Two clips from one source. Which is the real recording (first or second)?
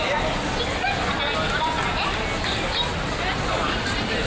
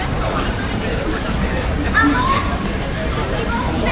first